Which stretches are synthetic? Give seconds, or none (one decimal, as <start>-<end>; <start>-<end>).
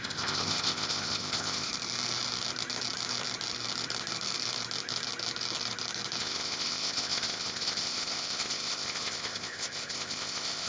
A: 0.0-1.7; 6.2-10.7